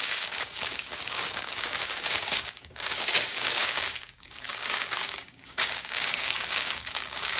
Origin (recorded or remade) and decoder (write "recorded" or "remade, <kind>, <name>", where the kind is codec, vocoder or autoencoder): remade, codec, DAC